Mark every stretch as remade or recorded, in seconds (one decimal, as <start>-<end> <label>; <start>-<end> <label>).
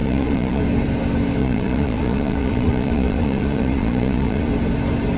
0.0-0.6 remade; 0.6-1.4 recorded; 1.4-4.5 remade; 4.5-5.2 recorded